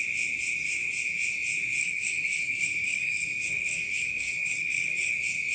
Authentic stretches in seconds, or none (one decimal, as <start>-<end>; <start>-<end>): 0.0-1.8; 5.1-5.5